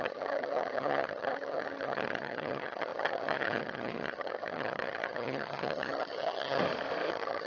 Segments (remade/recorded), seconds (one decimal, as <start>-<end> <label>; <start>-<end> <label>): 0.0-6.6 remade; 6.6-7.1 recorded; 7.1-7.5 remade